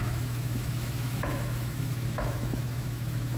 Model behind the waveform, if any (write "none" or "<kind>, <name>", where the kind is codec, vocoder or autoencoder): autoencoder, DAC-VAE